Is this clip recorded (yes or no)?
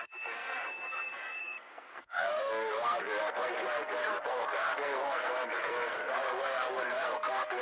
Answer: no